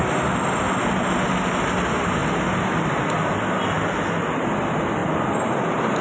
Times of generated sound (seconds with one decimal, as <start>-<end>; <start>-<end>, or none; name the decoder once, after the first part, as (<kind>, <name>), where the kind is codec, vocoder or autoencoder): none